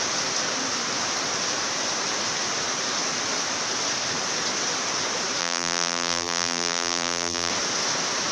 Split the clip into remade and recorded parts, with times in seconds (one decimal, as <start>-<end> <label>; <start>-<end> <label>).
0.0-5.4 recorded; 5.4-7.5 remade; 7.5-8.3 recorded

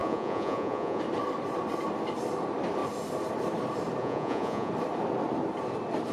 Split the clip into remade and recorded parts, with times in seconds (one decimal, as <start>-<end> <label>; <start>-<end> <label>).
0.0-1.0 remade; 1.0-4.0 recorded; 4.0-4.7 remade; 4.7-6.1 recorded

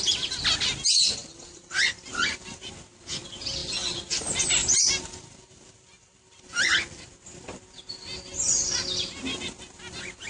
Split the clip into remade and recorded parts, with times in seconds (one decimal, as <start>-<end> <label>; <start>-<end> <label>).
0.0-1.2 recorded; 1.2-2.7 remade; 2.7-4.6 recorded; 4.6-6.7 remade; 6.7-10.3 recorded